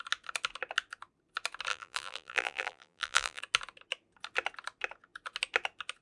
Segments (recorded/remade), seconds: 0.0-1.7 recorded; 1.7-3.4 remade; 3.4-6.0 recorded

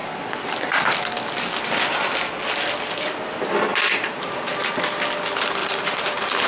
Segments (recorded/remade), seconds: 0.0-0.5 remade; 0.5-3.7 recorded; 3.7-4.5 remade; 4.5-5.6 recorded; 5.6-6.5 remade

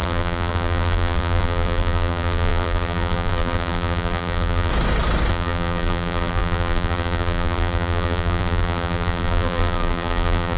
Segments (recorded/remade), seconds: 0.0-4.7 remade; 4.7-5.3 recorded; 5.3-10.6 remade

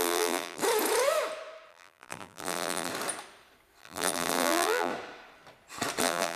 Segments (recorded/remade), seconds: 0.0-0.6 remade; 0.6-1.7 recorded; 1.7-2.9 remade; 2.9-3.8 recorded; 3.8-4.9 remade; 4.9-6.0 recorded; 6.0-6.4 remade

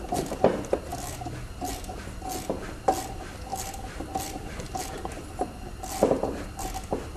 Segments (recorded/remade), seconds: 0.0-3.5 recorded; 3.5-4.8 remade; 4.8-7.2 recorded

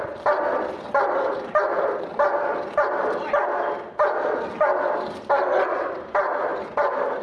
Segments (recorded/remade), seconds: 0.0-7.2 recorded